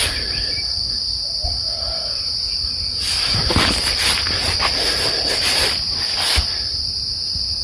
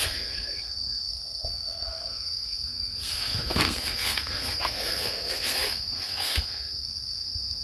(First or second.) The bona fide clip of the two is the first